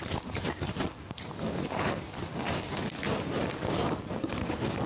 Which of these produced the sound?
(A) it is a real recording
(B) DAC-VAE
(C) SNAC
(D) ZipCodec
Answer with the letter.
A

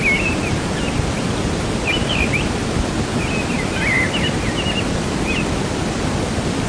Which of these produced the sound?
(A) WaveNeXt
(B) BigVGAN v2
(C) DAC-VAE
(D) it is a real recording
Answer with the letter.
D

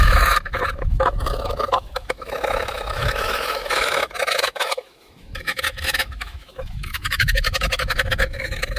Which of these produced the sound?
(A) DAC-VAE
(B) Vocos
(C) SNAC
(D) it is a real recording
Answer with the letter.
A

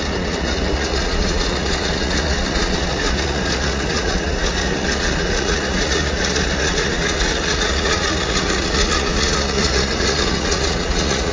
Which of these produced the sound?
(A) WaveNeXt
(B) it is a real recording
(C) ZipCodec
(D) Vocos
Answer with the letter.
D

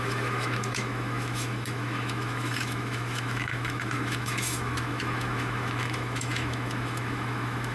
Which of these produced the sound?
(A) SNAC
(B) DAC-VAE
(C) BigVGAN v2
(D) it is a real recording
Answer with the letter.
B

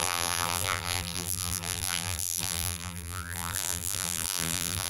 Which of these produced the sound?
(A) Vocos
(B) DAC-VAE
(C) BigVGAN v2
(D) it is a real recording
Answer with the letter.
C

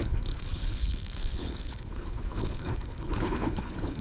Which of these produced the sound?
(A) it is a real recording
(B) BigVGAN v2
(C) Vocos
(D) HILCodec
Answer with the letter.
D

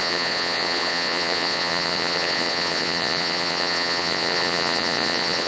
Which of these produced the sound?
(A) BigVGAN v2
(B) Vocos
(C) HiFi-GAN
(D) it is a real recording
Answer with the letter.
B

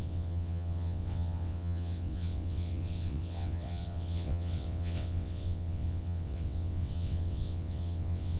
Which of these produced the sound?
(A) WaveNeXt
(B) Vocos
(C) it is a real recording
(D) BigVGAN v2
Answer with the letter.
A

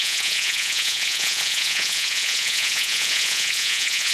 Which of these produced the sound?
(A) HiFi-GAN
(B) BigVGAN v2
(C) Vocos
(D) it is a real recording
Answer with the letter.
C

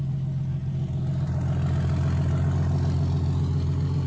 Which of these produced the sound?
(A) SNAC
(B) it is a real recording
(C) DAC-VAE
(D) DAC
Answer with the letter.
B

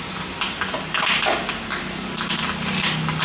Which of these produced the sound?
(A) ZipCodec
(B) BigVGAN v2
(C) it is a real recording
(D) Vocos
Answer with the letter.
C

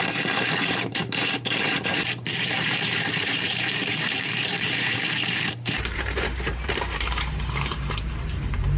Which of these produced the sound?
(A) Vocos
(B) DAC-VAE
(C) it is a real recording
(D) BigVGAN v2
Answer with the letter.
D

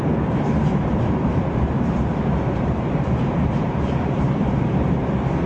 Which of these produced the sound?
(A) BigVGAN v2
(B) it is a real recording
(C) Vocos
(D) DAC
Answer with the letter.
A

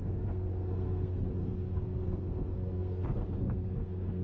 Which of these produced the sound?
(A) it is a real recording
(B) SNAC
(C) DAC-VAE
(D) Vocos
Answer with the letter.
B